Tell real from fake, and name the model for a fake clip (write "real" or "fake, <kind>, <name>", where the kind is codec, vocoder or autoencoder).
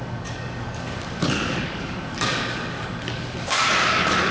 fake, codec, DAC